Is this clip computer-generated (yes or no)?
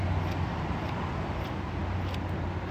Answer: no